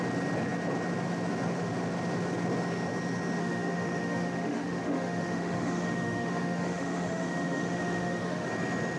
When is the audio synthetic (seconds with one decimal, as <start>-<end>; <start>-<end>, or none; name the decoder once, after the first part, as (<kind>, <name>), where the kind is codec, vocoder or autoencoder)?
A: 3.4-8.5 (autoencoder, DAC-VAE)